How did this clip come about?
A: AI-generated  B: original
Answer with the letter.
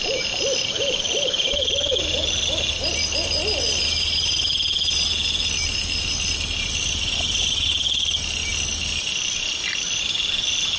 B